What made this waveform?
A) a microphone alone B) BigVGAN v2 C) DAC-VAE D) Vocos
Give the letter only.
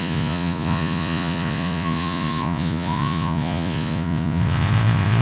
D